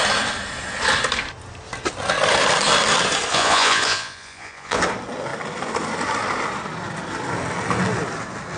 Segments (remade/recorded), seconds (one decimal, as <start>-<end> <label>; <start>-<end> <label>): 0.0-3.3 recorded; 3.3-4.8 remade; 4.8-8.6 recorded